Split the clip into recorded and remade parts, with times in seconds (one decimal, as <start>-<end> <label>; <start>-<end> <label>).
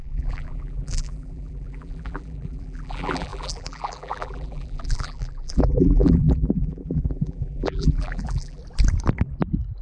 0.0-8.6 remade; 8.6-9.8 recorded